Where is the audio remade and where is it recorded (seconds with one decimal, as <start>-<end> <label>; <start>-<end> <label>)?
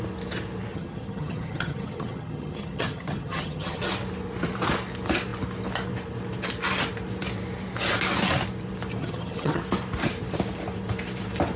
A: 0.0-0.7 recorded; 0.7-3.8 remade; 3.8-9.0 recorded; 9.0-9.6 remade; 9.6-11.6 recorded